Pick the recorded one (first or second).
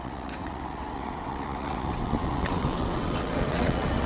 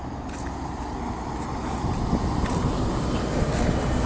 second